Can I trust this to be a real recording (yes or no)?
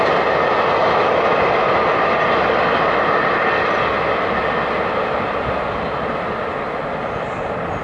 yes